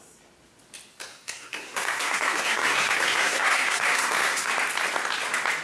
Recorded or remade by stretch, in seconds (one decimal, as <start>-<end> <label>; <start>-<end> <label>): 0.0-1.1 recorded; 1.1-4.5 remade; 4.5-5.6 recorded